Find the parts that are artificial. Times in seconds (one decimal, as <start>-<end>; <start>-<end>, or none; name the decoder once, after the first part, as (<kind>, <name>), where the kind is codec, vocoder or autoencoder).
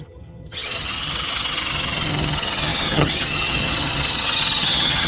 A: 0.0-5.1 (vocoder, HiFi-GAN)